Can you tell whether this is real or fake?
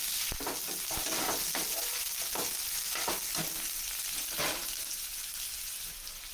real